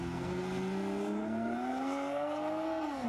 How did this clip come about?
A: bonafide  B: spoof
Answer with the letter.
B